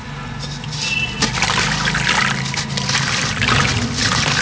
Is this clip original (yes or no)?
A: yes